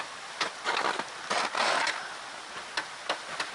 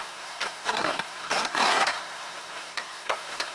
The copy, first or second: second